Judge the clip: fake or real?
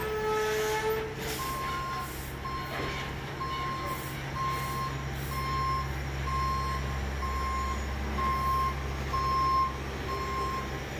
real